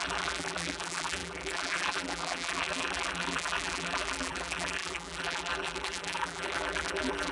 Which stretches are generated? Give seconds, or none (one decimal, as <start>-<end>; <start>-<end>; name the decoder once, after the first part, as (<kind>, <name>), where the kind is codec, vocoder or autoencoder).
0.0-7.3 (vocoder, BigVGAN v2)